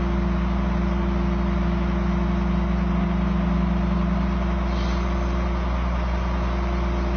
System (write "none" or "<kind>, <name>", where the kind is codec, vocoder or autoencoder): none